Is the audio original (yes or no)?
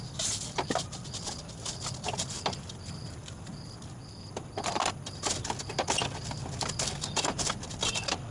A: yes